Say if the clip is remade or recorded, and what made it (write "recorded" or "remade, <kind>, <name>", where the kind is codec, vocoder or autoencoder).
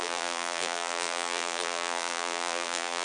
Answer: remade, vocoder, BigVGAN v2